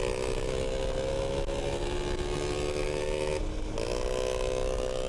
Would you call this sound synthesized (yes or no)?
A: no